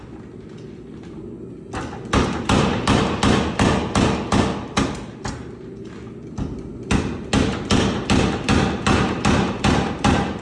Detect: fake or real real